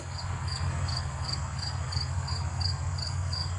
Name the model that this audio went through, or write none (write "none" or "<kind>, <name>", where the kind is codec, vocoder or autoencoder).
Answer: codec, SNAC